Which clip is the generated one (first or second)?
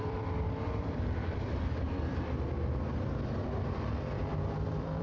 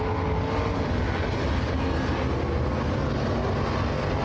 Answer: first